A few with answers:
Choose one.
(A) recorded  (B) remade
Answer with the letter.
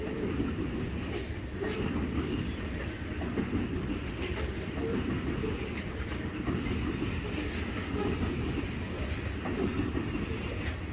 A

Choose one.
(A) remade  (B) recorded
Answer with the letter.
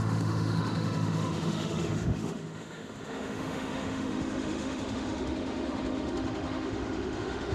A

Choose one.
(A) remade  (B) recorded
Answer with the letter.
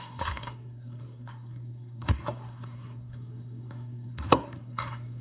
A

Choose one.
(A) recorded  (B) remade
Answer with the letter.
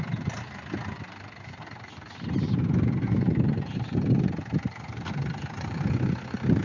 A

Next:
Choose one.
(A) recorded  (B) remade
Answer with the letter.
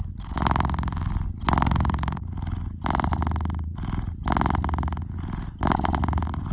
A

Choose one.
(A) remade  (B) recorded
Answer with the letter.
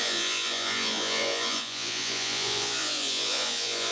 A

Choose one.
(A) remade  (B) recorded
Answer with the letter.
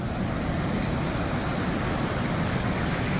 B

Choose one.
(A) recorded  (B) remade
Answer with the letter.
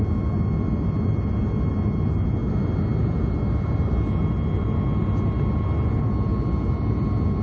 A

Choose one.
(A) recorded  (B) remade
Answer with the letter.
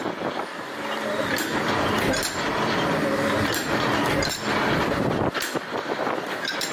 B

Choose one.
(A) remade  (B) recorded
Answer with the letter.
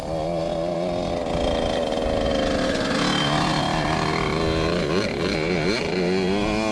B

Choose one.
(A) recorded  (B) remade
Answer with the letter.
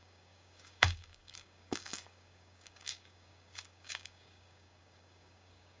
B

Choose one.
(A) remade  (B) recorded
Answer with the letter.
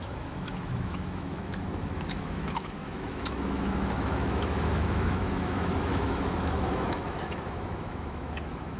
A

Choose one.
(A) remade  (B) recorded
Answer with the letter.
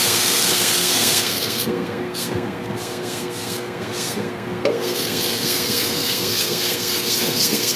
A